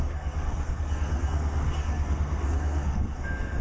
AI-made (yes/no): yes